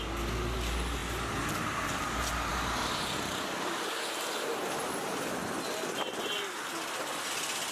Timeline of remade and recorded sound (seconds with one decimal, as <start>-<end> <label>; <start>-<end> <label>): 0.0-7.7 recorded